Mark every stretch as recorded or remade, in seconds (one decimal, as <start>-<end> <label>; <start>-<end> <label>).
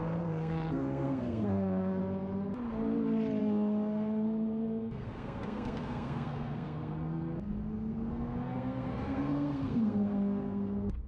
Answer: 0.0-2.0 remade; 2.0-3.4 recorded; 3.4-11.1 remade